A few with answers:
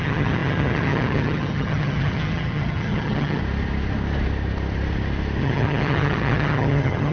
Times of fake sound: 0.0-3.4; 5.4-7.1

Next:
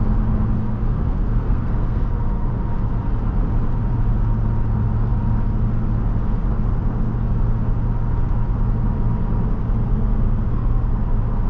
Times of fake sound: 0.6-2.5; 9.9-10.9

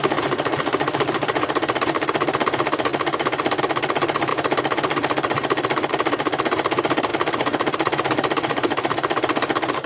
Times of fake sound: 0.0-9.9

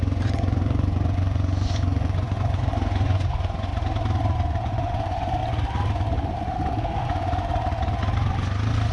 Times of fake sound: 0.0-3.7; 4.7-5.4; 7.0-7.5

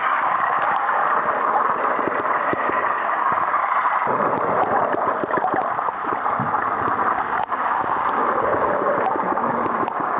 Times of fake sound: 0.0-1.0; 2.2-3.6; 7.0-10.2

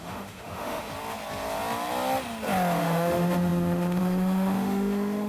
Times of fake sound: 0.0-0.9; 2.8-5.3